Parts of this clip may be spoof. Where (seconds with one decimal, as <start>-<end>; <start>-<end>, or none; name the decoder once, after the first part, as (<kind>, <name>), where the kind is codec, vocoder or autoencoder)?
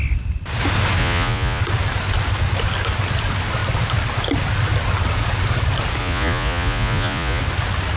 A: 1.0-1.6 (vocoder, Vocos); 6.0-7.4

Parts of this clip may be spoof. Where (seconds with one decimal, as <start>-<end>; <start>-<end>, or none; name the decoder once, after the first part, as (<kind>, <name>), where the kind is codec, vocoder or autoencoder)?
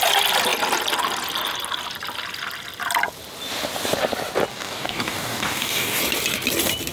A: 4.5-6.0 (codec, DAC)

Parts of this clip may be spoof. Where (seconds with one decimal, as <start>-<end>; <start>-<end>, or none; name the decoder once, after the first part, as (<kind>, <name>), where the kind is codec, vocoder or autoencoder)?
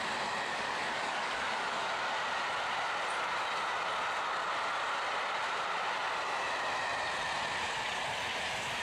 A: 0.5-2.0 (codec, DAC)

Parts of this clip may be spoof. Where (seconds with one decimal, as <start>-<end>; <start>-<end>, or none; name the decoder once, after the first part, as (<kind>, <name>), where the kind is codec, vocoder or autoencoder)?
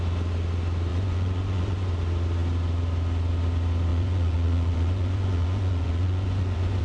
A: 0.9-1.9 (vocoder, Vocos); 3.9-6.8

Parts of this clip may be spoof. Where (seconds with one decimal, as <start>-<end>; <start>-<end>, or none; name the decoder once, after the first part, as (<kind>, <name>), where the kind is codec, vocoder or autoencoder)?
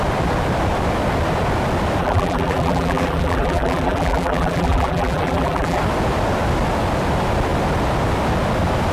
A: 2.0-5.8 (vocoder, BigVGAN v2)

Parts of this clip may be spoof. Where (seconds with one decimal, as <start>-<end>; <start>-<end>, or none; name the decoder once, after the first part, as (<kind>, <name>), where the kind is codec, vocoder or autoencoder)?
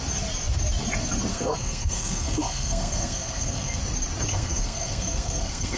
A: 1.3-3.8 (codec, SNAC); 4.3-5.8